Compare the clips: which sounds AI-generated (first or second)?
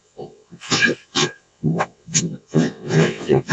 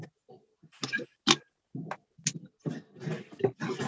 first